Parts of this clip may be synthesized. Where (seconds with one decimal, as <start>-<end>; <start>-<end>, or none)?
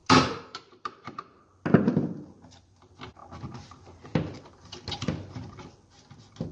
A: 0.0-1.4